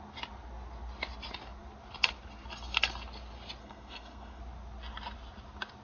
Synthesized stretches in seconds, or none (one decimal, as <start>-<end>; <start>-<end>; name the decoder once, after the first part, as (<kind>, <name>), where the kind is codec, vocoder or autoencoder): 3.6-4.4 (codec, SNAC)